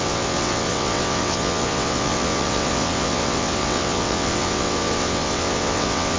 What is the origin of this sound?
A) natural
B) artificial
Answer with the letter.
B